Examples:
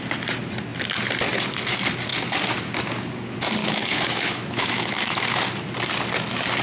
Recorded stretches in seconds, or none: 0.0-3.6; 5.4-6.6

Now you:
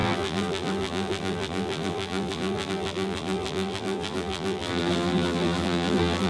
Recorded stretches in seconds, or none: none

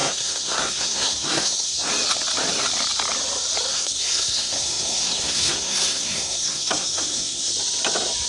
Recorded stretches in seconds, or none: 1.9-3.7; 7.5-8.3

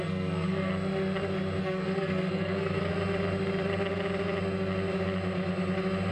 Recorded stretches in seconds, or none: 0.7-1.6; 2.9-6.1

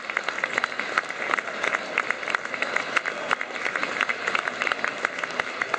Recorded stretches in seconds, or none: 0.0-3.8; 4.9-5.8

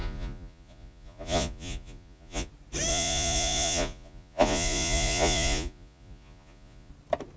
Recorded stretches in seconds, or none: 2.5-2.9; 6.9-7.4

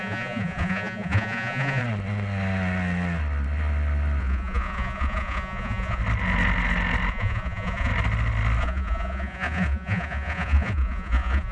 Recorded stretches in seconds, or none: 1.8-4.2; 6.0-7.1; 7.9-8.6